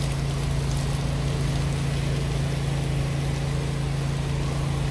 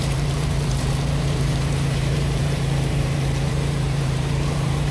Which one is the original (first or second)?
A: first